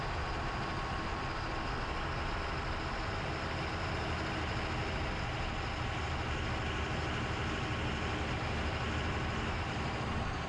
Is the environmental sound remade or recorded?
recorded